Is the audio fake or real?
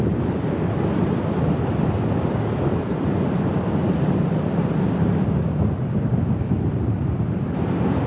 real